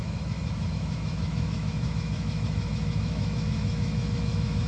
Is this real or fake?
fake